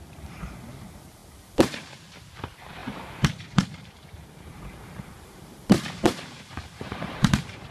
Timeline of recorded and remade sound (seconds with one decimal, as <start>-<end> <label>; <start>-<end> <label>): 0.0-7.7 remade